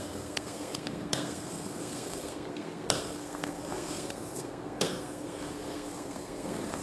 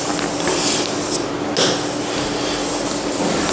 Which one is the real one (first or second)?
second